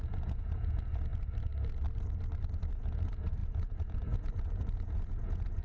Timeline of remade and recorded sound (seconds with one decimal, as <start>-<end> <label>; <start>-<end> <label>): 0.0-1.1 remade; 1.1-2.6 recorded; 2.6-5.6 remade